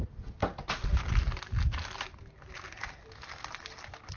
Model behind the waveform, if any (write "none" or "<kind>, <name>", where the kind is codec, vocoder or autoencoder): none